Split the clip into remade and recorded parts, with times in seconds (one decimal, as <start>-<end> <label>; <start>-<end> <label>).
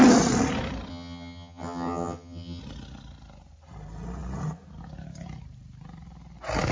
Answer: 0.0-0.9 recorded; 0.9-2.6 remade; 2.6-6.7 recorded